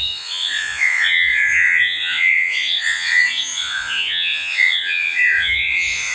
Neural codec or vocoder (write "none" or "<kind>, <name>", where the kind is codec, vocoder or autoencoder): vocoder, Vocos